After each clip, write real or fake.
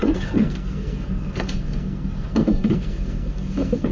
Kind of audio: fake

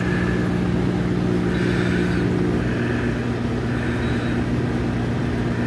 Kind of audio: real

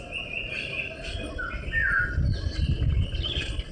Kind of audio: real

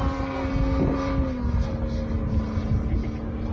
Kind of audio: real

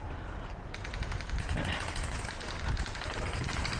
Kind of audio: real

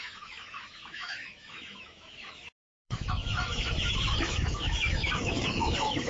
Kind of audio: fake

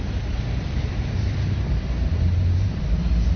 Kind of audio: fake